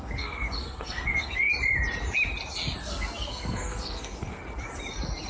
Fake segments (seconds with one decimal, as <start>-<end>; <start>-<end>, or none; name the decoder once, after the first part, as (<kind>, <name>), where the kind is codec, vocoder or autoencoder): 0.0-1.5 (codec, SNAC); 2.8-4.4